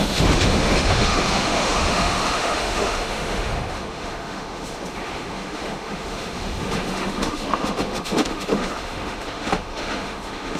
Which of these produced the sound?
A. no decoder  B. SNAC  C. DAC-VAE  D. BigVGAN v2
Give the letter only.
C